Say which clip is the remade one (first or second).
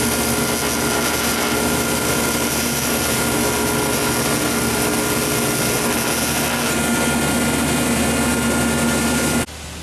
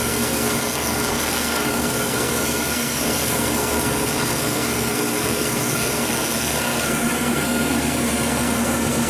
second